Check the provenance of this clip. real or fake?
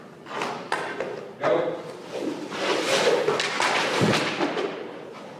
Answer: real